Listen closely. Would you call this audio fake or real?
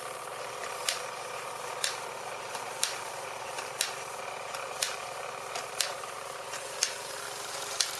fake